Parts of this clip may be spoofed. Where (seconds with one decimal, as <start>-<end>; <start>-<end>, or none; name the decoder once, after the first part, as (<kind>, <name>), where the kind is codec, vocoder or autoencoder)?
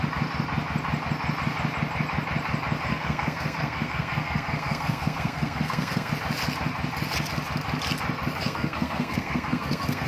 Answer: 2.9-6.1 (codec, SNAC); 8.4-10.1